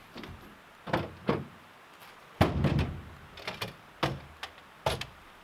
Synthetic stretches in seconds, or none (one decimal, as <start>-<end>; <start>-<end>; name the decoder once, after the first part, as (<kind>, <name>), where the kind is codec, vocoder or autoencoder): none